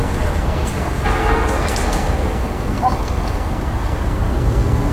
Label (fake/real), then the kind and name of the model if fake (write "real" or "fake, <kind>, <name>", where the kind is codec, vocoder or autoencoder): fake, codec, SNAC